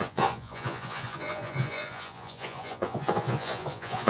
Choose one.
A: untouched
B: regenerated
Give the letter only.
B